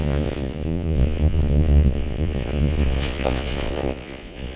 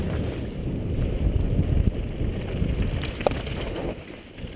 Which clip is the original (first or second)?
second